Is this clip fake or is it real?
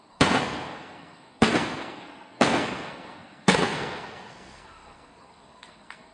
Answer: fake